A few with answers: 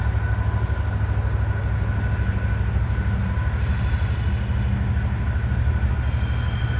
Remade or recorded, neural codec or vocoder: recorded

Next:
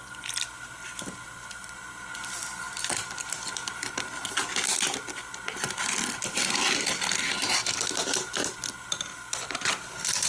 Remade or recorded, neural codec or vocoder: recorded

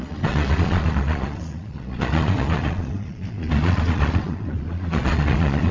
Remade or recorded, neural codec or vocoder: remade, vocoder, Vocos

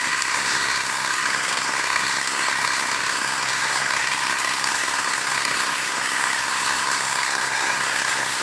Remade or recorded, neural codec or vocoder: remade, codec, SNAC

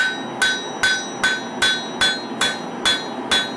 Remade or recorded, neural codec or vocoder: recorded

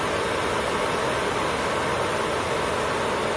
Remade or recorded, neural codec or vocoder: recorded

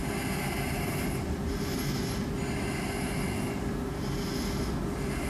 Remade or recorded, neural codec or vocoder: recorded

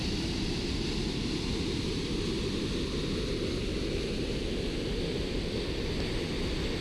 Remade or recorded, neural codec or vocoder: recorded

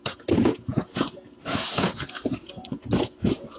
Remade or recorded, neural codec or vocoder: remade, vocoder, Vocos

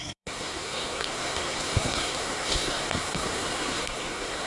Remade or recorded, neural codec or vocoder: remade, codec, SNAC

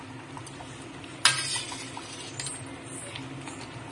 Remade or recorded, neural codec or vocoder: recorded